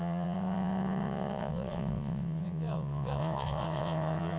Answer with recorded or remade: remade